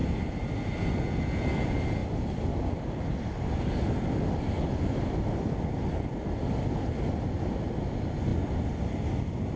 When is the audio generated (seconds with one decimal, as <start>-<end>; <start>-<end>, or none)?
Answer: none